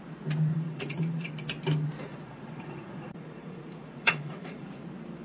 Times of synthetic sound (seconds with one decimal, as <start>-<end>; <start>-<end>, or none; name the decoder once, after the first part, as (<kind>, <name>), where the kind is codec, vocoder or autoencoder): 0.5-1.3 (vocoder, Vocos); 2.1-4.8